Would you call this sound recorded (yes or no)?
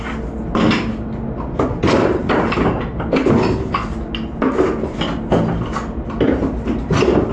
yes